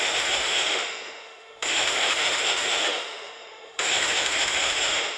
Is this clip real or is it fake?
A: fake